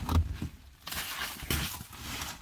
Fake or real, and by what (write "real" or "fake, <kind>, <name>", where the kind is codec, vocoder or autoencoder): real